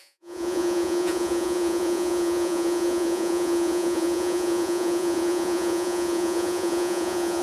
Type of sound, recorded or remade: remade